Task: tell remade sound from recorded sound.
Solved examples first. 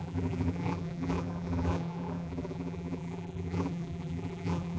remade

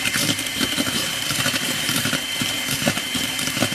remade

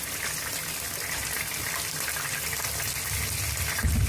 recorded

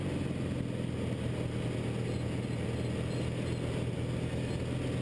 recorded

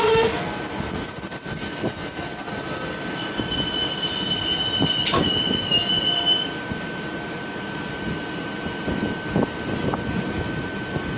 recorded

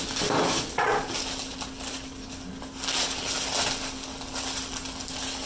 recorded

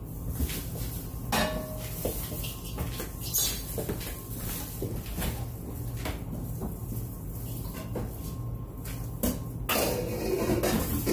recorded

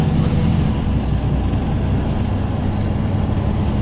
recorded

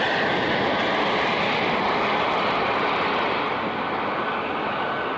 recorded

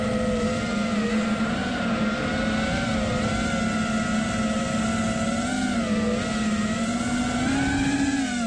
recorded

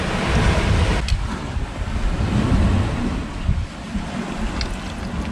recorded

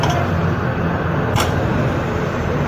recorded